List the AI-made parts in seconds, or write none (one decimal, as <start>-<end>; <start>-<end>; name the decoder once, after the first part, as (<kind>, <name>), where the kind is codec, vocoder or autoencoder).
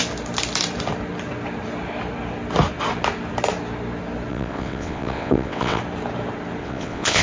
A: 4.3-5.8 (vocoder, WaveNeXt); 6.6-7.2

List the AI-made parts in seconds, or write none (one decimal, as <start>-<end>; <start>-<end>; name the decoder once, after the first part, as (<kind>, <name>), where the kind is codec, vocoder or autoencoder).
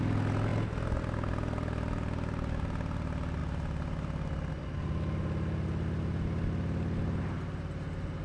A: none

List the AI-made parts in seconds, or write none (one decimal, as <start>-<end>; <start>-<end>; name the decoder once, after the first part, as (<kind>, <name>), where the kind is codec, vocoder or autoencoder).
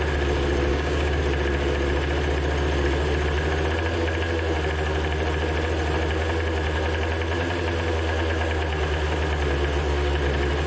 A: 0.7-1.2 (codec, DAC)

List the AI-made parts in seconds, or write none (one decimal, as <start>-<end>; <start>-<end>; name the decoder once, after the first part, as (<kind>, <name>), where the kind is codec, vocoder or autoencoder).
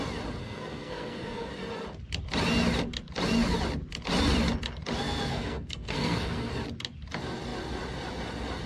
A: 0.4-1.5 (codec, SNAC); 5.3-6.5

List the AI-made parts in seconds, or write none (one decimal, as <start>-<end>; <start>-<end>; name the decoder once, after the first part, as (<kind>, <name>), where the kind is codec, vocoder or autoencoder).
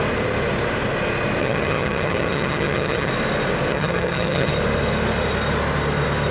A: 1.4-3.1 (vocoder, HiFi-GAN); 3.7-4.5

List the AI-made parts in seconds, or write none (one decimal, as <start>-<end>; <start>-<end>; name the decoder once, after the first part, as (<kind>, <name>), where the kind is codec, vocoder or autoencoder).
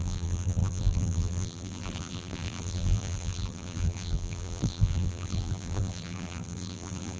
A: 0.0-7.2 (vocoder, BigVGAN v2)